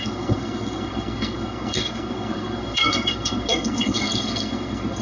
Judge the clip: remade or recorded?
remade